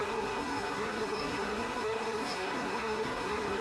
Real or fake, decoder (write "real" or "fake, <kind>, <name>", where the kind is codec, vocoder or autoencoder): fake, codec, SNAC